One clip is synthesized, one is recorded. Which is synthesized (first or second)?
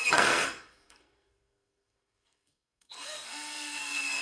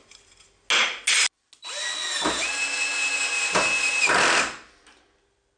first